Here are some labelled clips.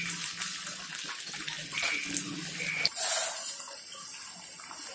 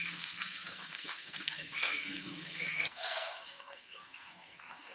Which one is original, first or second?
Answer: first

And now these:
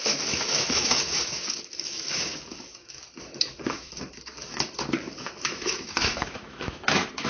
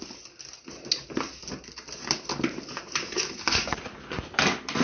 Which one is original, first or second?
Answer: second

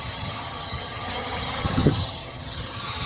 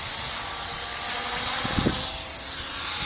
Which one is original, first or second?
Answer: second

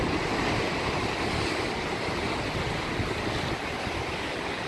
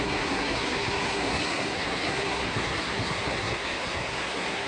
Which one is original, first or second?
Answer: first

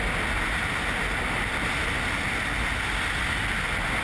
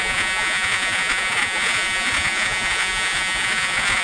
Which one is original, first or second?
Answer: first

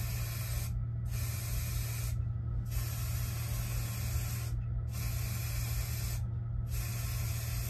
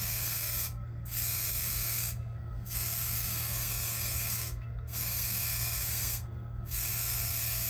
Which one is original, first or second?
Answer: first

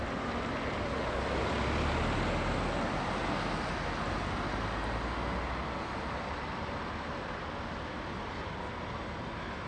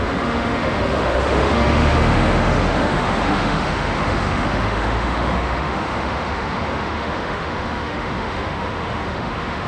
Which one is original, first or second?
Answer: first